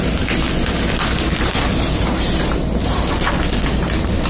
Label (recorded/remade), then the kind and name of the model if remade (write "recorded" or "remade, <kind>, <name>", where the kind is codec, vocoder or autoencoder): recorded